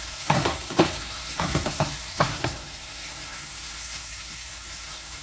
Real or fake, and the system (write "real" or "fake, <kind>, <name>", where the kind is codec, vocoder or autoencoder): fake, codec, SNAC